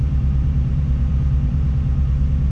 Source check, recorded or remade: remade